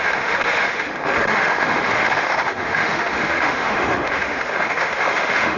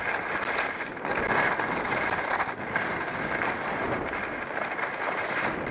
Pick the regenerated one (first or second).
first